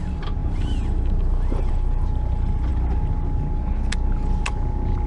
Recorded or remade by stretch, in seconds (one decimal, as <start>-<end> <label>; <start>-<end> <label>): 0.0-5.1 recorded